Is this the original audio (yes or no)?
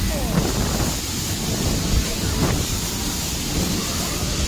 no